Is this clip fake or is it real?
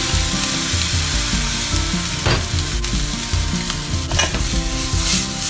real